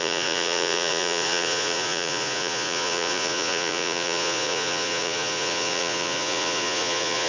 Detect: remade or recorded remade